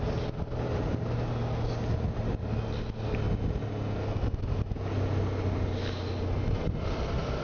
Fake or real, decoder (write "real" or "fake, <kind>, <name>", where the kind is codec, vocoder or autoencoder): real